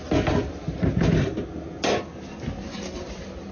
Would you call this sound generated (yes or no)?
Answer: no